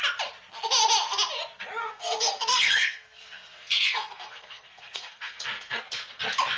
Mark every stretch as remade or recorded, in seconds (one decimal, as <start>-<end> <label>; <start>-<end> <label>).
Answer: 0.0-1.8 recorded; 1.8-5.8 remade; 5.8-6.6 recorded